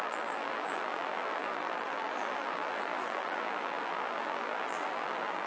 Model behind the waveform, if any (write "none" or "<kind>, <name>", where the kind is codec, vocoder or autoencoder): vocoder, BigVGAN v2